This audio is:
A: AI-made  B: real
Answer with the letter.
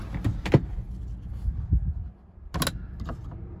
B